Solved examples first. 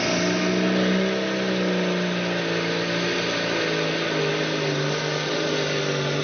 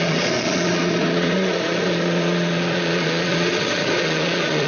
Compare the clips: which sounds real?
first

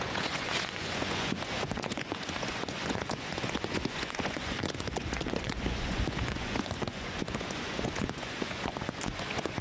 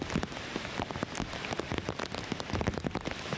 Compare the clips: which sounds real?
second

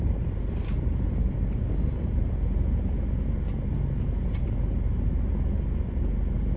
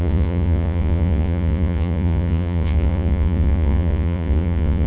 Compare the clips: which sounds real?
first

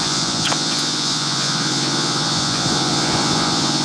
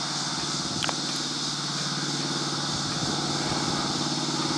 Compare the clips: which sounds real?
second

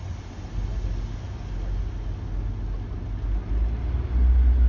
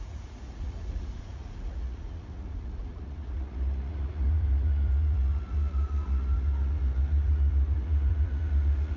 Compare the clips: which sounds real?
first